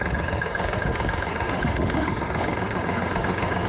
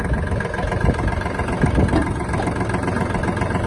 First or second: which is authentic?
second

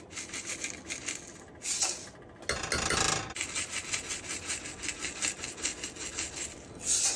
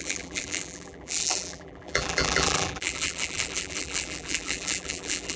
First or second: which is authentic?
first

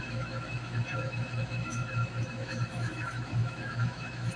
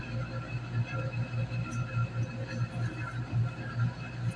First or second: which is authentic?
second